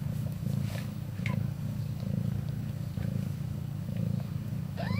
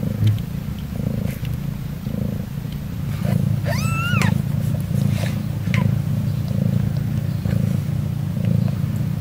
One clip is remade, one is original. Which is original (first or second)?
second